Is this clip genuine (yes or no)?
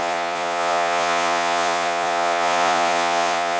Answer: no